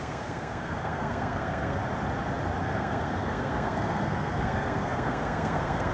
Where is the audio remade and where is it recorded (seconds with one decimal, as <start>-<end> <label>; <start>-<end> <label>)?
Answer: 0.0-1.8 remade; 1.8-2.6 recorded; 2.6-5.9 remade